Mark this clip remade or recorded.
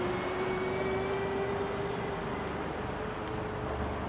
recorded